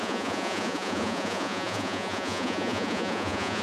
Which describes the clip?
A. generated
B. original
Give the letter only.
A